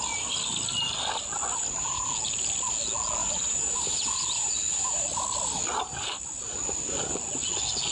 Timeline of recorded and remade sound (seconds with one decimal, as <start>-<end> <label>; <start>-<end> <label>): 0.0-1.6 recorded; 1.6-2.1 remade; 2.1-3.2 recorded; 3.2-7.1 remade; 7.1-7.9 recorded